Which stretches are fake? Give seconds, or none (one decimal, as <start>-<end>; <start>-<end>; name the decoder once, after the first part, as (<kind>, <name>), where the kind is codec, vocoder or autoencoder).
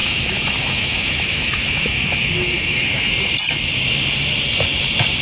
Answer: 0.0-3.1 (autoencoder, DAC-VAE)